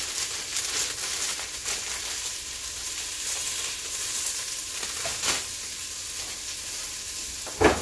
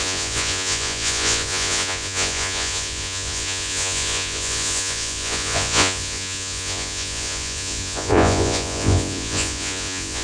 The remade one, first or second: second